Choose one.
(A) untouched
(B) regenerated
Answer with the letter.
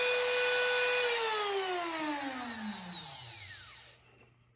A